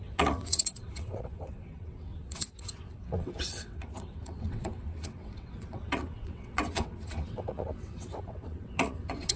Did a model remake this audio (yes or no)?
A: yes